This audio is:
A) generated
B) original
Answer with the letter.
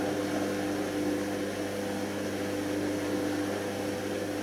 B